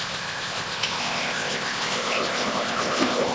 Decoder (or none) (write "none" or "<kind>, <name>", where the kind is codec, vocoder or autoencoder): codec, ZipCodec